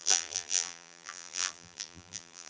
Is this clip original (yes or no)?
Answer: no